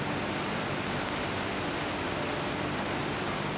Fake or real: real